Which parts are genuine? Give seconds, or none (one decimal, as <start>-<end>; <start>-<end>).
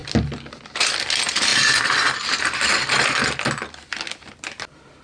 0.0-1.5; 2.7-5.0